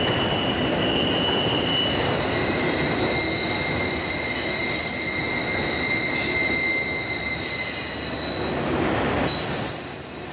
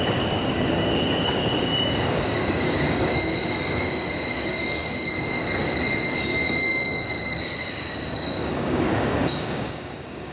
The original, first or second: first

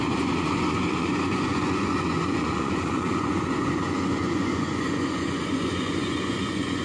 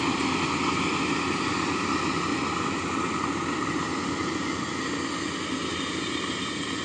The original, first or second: second